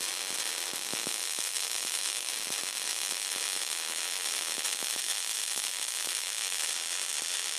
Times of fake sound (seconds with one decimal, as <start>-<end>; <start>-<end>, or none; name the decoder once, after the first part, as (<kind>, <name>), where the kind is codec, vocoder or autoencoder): 0.9-2.3 (autoencoder, DAC-VAE); 2.9-6.7